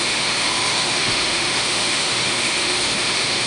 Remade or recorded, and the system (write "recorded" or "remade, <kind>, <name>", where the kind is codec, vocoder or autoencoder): remade, autoencoder, DAC-VAE